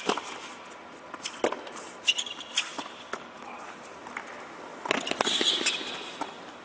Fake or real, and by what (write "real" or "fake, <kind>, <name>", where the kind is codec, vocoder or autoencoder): real